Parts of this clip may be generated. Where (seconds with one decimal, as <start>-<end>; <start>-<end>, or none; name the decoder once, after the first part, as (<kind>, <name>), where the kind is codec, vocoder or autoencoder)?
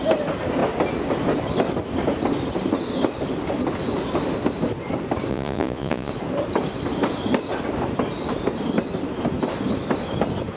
5.3-6.1 (vocoder, Vocos)